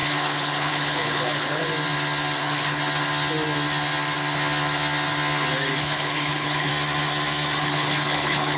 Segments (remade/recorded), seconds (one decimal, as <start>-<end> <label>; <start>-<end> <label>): 0.0-1.7 remade; 1.7-2.4 recorded; 2.4-2.8 remade; 2.8-5.8 recorded; 5.8-6.7 remade; 6.7-7.6 recorded; 7.6-8.6 remade